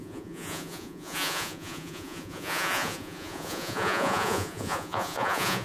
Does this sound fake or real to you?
fake